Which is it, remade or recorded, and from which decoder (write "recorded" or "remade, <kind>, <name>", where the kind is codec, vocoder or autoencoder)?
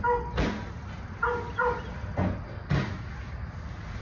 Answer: recorded